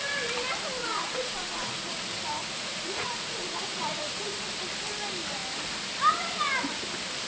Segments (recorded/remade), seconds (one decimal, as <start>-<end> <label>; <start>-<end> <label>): 0.0-0.8 recorded; 0.8-2.0 remade; 2.0-2.4 recorded; 2.4-4.3 remade; 4.3-7.3 recorded